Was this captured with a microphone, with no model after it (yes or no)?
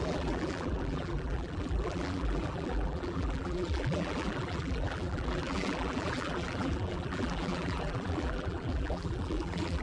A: no